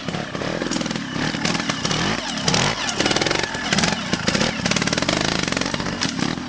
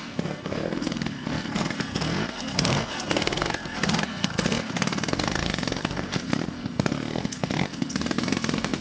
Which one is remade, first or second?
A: second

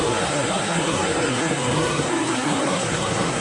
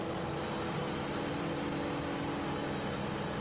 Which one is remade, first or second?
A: first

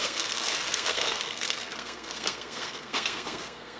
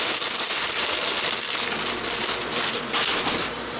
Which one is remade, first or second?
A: first